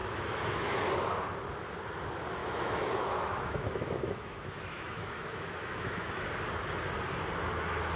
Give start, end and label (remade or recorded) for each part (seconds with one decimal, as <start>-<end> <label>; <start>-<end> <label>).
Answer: 0.0-0.8 remade; 0.8-2.4 recorded; 2.4-6.3 remade; 6.3-8.0 recorded